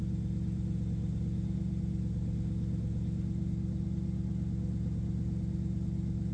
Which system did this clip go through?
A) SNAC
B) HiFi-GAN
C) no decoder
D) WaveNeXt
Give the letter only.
C